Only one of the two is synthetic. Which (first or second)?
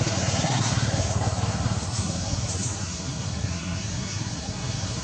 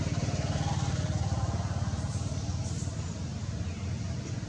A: first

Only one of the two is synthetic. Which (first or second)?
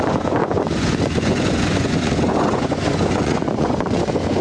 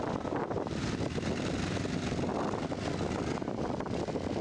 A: first